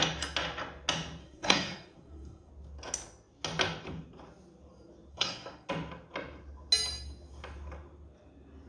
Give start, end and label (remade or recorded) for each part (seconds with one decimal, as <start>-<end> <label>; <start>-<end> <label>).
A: 0.0-1.2 recorded; 1.2-2.5 remade; 2.5-5.1 recorded; 5.1-5.7 remade; 5.7-8.7 recorded